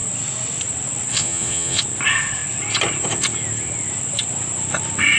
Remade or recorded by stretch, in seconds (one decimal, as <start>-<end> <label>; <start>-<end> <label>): 0.0-1.1 recorded; 1.1-1.8 remade; 1.8-5.2 recorded